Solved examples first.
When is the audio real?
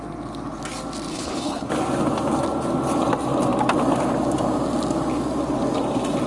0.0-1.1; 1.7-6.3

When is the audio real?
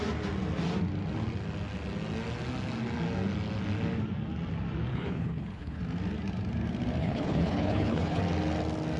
0.0-4.9; 5.8-7.0; 8.2-9.0